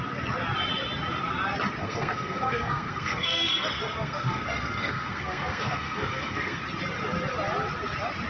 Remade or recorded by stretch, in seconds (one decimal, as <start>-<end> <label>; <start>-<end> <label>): 0.0-1.8 recorded; 1.8-6.6 remade; 6.6-8.3 recorded